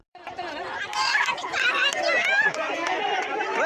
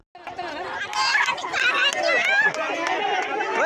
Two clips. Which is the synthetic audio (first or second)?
first